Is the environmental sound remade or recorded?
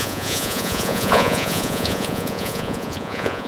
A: remade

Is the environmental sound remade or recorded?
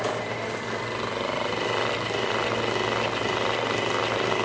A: recorded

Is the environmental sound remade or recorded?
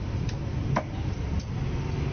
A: recorded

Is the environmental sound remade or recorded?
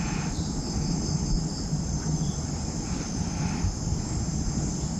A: recorded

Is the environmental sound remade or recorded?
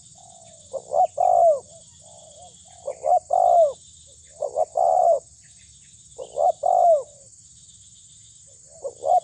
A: recorded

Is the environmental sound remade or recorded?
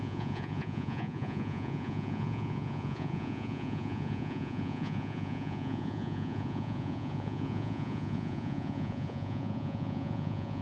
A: remade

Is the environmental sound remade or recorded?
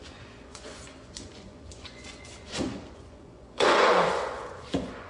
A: remade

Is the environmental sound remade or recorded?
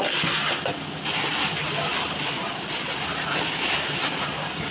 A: recorded